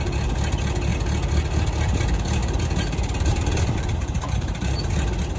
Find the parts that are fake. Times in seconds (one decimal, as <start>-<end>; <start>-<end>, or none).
2.4-4.8

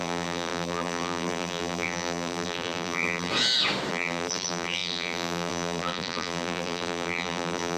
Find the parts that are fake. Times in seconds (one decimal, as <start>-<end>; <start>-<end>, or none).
0.0-3.3; 3.9-7.8

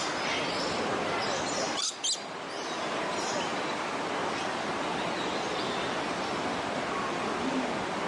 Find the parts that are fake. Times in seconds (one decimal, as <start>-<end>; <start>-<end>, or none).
none

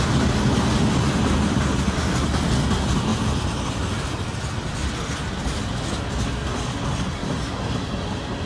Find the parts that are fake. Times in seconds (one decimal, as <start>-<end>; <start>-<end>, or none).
none

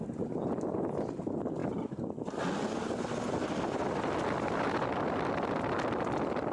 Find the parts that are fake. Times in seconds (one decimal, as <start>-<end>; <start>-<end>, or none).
none

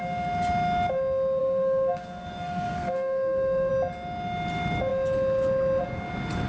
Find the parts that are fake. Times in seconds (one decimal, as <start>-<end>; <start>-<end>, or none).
1.4-3.7

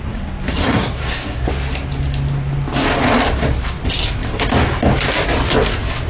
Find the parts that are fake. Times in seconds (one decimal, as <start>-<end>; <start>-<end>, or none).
0.6-1.5